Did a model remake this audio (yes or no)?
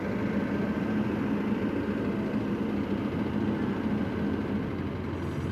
no